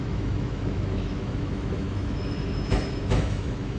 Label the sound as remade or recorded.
remade